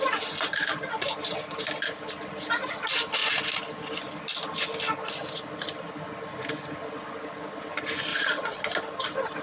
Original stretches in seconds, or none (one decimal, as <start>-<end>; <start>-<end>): 0.0-8.1; 8.6-9.4